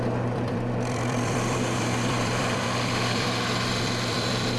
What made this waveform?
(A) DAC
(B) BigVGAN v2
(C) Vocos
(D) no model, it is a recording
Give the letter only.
B